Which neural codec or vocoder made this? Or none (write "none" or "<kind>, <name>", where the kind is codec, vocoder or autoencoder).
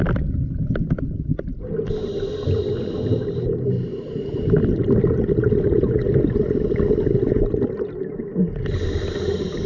none